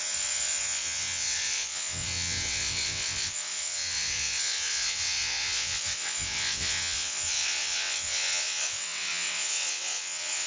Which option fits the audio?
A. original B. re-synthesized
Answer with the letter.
B